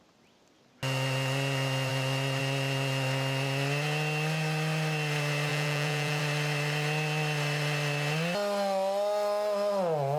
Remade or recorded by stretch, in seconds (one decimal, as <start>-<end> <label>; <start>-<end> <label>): 0.0-5.5 recorded; 5.5-6.2 remade; 6.2-10.2 recorded